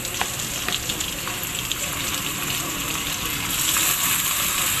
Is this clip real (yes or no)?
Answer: yes